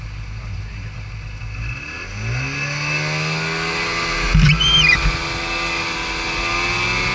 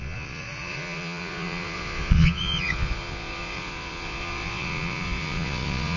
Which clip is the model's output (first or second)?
second